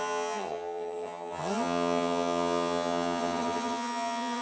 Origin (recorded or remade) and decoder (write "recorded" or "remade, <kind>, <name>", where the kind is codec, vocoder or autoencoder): remade, vocoder, HiFi-GAN